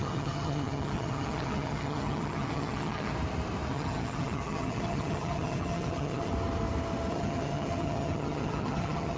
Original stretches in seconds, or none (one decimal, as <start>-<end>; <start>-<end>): 3.1-3.7; 6.3-7.1